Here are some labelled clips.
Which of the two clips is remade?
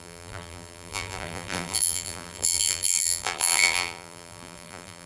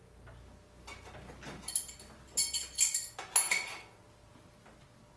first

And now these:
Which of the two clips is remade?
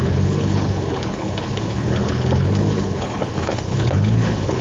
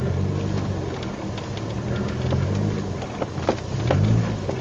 first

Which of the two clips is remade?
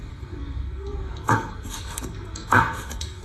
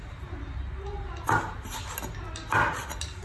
first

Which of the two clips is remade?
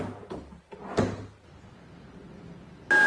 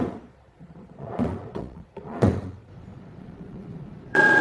second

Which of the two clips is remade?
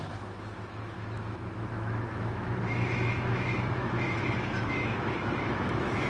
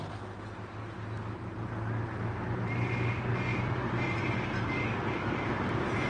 first